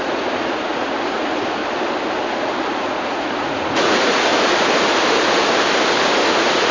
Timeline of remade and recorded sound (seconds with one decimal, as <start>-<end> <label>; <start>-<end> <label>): 0.0-1.6 remade; 1.6-2.8 recorded; 2.8-4.3 remade; 4.3-6.3 recorded; 6.3-6.7 remade